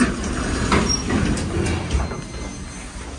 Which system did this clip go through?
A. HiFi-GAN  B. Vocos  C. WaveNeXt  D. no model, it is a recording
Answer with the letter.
D